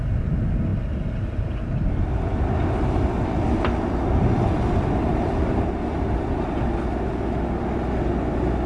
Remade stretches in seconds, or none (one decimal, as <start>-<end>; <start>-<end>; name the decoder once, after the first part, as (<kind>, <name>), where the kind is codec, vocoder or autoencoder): none